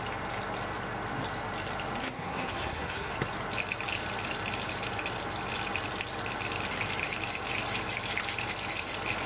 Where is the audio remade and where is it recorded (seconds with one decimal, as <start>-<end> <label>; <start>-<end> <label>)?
0.0-2.0 recorded; 2.0-3.1 remade; 3.1-9.3 recorded